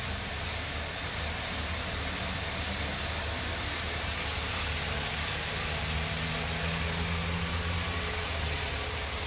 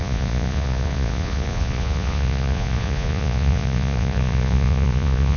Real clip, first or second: first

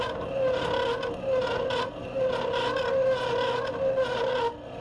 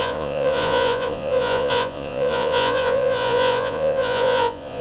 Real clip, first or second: first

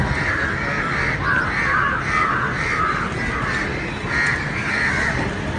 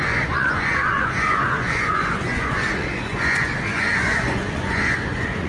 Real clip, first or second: first